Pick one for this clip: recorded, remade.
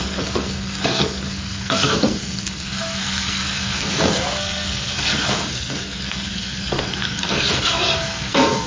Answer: remade